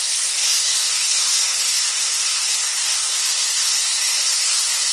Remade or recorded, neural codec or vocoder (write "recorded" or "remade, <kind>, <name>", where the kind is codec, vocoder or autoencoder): remade, codec, SNAC